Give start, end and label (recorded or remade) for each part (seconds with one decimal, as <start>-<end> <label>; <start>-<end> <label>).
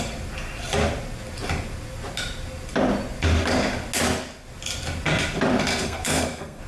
0.0-5.7 recorded; 5.7-6.7 remade